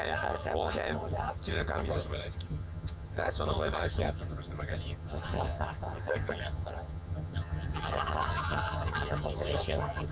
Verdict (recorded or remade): remade